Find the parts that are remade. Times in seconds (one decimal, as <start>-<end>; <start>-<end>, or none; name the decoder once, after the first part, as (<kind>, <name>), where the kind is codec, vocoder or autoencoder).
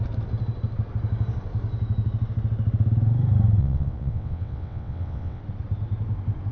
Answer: 3.6-5.4 (vocoder, WaveNeXt)